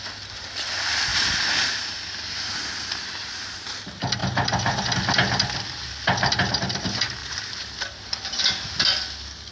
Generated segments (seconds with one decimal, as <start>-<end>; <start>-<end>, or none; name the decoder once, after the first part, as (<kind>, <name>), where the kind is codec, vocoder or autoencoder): 7.2-7.8 (vocoder, BigVGAN v2)